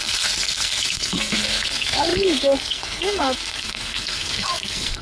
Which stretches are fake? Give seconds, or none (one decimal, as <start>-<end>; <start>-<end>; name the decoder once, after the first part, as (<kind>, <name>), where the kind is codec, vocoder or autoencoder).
0.0-5.0 (codec, SNAC)